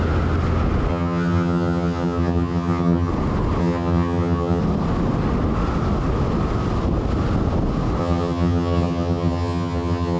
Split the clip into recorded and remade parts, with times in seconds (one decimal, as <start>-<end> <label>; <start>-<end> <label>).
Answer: 0.0-0.9 recorded; 0.9-3.1 remade; 3.1-3.6 recorded; 3.6-4.6 remade; 4.6-8.0 recorded; 8.0-10.2 remade